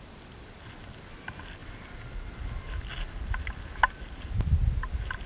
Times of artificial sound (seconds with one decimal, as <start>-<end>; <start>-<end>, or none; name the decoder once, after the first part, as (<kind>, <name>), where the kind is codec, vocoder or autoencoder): none